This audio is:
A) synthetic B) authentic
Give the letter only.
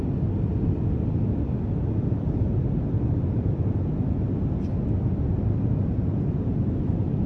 B